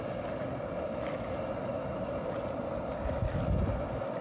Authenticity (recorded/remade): recorded